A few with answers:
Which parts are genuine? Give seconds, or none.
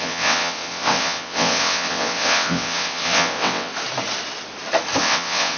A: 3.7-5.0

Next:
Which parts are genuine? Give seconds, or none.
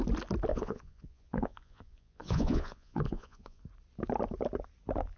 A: 0.0-0.5; 3.6-5.2